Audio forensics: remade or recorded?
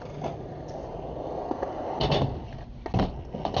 recorded